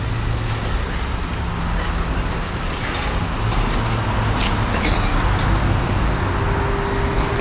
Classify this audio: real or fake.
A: real